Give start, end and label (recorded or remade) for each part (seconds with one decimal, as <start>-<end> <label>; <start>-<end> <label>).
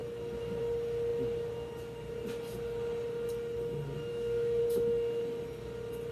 0.0-4.1 recorded; 4.1-4.6 remade; 4.6-6.1 recorded